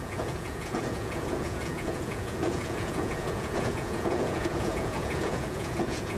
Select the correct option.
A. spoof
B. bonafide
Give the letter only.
A